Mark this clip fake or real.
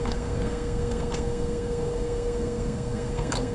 fake